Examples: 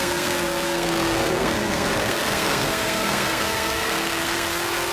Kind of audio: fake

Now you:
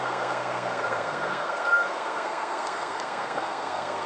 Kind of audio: fake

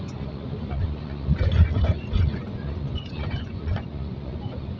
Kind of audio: fake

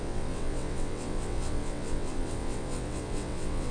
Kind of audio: fake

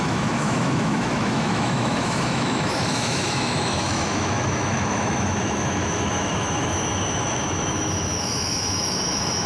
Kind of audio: fake